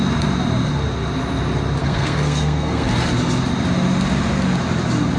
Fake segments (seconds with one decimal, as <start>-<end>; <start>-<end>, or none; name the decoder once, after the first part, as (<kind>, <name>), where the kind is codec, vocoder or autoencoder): 1.8-2.9 (codec, SNAC)